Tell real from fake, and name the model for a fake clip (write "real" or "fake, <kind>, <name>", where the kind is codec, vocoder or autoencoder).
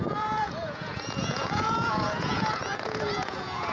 fake, vocoder, Vocos